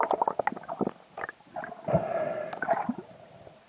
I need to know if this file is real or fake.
real